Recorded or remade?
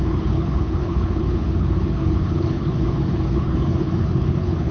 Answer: remade